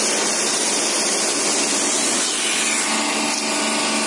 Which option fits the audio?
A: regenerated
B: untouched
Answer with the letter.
B